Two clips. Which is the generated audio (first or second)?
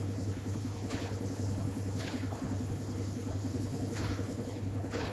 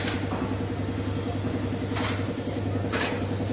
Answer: first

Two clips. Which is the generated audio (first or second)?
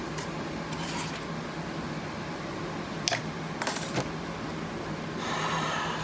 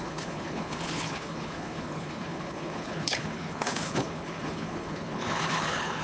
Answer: second